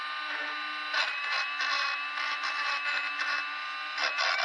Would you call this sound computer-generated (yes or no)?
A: no